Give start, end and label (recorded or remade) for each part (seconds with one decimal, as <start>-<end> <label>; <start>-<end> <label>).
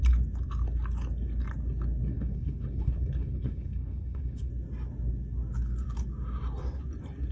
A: 0.0-2.1 recorded; 2.1-4.5 remade; 4.5-7.3 recorded